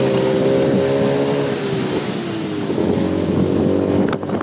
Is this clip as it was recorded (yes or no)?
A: yes